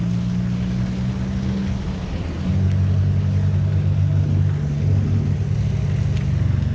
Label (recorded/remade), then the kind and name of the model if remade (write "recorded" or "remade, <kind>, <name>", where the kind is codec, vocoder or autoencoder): recorded